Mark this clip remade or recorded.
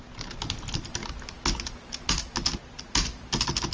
recorded